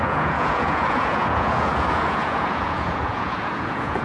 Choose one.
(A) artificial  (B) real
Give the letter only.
A